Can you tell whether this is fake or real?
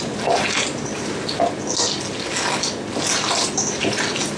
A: real